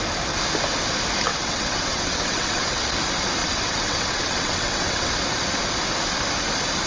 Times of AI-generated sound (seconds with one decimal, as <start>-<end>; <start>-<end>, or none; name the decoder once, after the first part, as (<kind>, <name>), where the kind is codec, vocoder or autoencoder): 1.3-2.8 (vocoder, WaveNeXt); 3.4-5.1